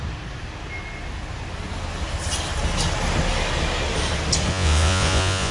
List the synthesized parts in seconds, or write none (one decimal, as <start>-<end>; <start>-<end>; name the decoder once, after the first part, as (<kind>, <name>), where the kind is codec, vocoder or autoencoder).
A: 4.5-5.5 (vocoder, Vocos)